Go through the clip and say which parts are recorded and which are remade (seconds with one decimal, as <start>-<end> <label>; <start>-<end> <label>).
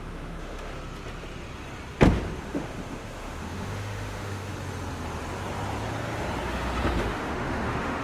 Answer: 0.0-0.7 remade; 0.7-2.4 recorded; 2.4-4.5 remade; 4.5-7.0 recorded; 7.0-8.0 remade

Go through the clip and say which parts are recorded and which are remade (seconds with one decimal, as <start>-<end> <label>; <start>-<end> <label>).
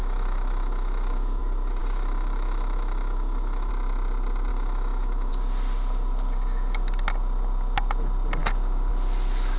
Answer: 0.0-1.4 remade; 1.4-1.8 recorded; 1.8-3.7 remade; 3.7-4.5 recorded; 4.5-5.3 remade; 5.3-9.6 recorded